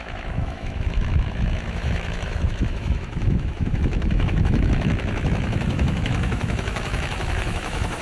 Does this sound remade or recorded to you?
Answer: remade